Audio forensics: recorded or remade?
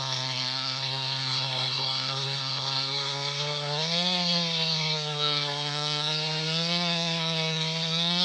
remade